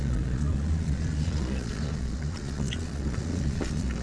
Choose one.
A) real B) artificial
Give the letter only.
B